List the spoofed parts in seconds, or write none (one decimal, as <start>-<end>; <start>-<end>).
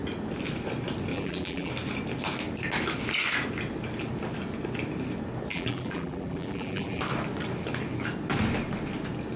1.1-1.7; 5.5-7.0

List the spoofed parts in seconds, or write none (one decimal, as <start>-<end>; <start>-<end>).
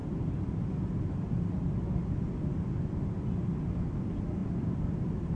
0.0-0.7; 4.4-5.3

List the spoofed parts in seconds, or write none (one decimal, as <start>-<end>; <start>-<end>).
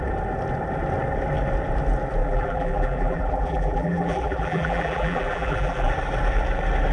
2.2-5.9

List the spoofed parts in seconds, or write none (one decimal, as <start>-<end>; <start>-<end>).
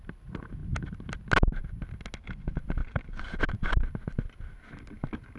2.8-3.5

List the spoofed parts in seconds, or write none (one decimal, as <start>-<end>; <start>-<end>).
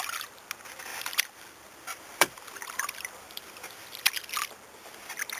0.9-4.1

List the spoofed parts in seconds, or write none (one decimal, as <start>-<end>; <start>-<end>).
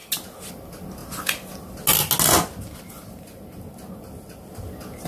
none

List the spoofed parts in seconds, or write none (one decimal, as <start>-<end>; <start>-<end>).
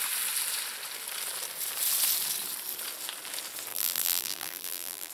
3.7-5.1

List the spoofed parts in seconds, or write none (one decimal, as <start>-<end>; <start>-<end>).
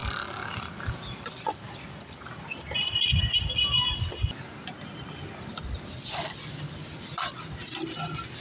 0.0-3.5